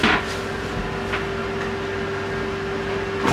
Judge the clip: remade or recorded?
recorded